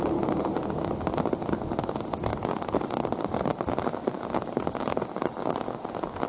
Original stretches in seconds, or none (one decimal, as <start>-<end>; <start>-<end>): 0.0-6.3